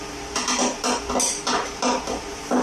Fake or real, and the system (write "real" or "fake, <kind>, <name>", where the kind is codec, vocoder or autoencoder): real